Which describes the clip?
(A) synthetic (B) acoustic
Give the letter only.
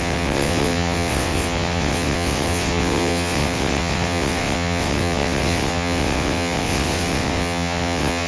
A